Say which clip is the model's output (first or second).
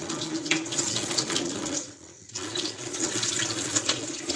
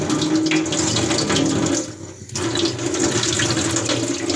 first